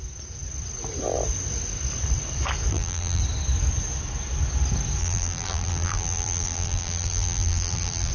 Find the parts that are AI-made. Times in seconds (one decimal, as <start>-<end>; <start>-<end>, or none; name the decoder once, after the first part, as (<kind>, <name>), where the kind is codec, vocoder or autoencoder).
2.7-3.2 (vocoder, BigVGAN v2); 5.0-8.1